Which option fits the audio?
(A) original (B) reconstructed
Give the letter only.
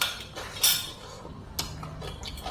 A